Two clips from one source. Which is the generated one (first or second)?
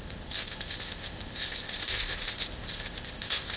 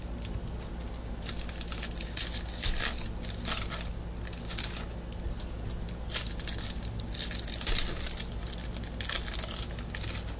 first